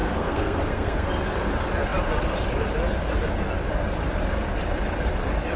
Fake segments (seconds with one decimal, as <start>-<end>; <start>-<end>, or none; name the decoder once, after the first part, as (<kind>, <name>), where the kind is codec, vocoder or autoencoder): 0.0-1.1 (codec, SNAC)